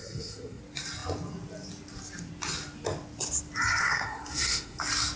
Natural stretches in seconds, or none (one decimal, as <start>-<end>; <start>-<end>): 0.6-3.8; 4.8-5.2